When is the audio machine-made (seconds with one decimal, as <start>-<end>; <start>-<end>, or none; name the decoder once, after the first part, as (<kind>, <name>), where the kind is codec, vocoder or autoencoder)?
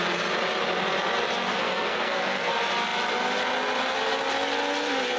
1.5-2.5 (codec, SNAC)